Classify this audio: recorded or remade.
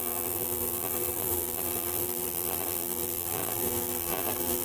remade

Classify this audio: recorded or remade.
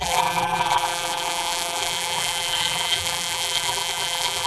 remade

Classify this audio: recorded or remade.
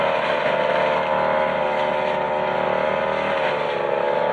recorded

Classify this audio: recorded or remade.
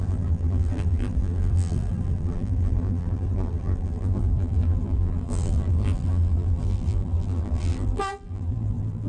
remade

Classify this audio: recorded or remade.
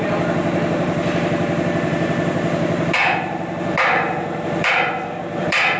remade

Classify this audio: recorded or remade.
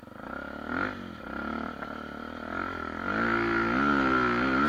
recorded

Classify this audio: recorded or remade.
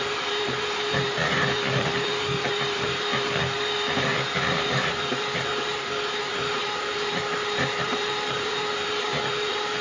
remade